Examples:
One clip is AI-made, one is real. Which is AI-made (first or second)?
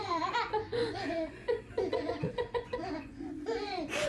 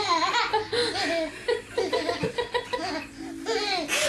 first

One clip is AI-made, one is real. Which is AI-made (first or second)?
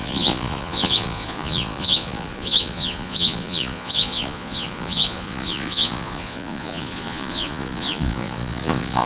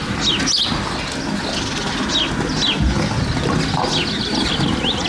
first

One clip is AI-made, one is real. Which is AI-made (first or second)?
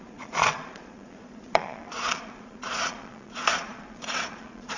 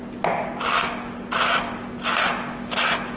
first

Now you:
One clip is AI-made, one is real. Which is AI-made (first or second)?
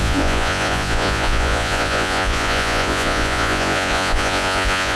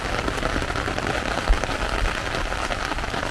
first